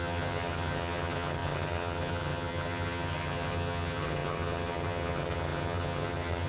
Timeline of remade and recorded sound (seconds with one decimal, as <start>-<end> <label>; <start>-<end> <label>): 0.0-6.5 remade